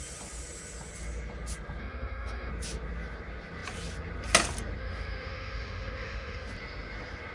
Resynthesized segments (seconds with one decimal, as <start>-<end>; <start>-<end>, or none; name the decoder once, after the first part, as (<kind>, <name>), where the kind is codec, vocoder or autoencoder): 1.8-2.5 (autoencoder, DAC-VAE); 4.8-6.5